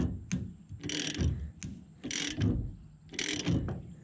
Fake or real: real